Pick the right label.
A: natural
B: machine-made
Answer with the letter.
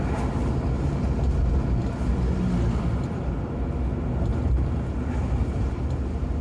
A